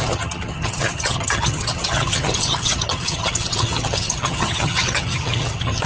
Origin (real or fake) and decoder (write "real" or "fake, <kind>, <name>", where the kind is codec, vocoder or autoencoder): fake, vocoder, HiFi-GAN